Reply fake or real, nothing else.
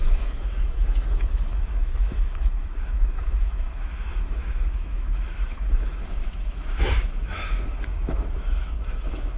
fake